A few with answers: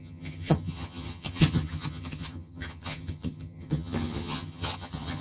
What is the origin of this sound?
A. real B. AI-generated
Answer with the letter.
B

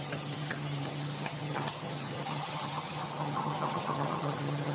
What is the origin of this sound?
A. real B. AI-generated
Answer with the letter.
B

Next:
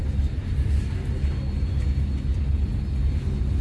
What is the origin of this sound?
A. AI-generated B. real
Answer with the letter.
B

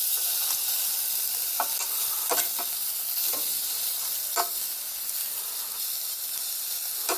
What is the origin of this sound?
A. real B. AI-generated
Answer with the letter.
A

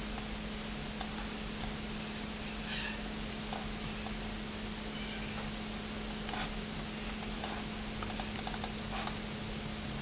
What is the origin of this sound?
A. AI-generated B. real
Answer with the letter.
B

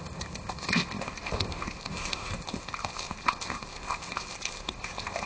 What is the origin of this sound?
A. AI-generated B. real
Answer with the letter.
A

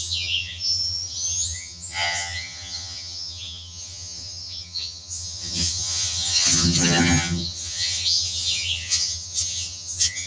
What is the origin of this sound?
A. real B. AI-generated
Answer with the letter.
B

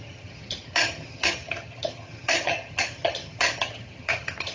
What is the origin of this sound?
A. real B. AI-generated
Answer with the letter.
B